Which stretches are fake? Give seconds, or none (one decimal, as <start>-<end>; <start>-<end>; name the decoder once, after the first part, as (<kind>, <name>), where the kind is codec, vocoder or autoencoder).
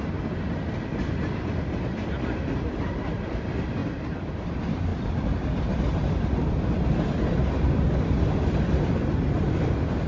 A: none